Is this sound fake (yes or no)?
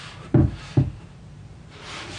yes